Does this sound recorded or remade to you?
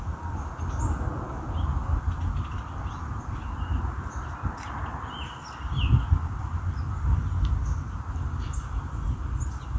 recorded